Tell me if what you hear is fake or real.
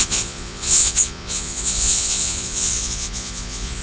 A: fake